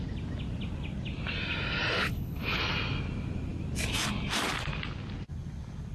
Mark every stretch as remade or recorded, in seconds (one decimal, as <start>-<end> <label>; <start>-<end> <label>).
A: 0.0-2.0 recorded; 2.0-2.6 remade; 2.6-5.9 recorded